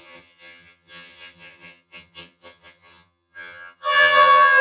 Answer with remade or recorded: remade